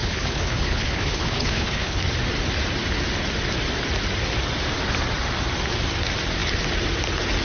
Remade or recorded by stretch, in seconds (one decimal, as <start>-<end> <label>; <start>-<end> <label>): 0.0-2.0 remade; 2.0-7.4 recorded